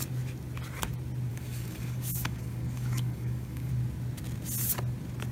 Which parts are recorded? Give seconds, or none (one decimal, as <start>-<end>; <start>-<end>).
0.0-1.3; 3.7-5.3